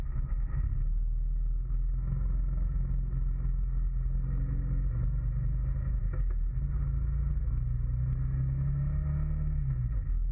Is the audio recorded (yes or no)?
yes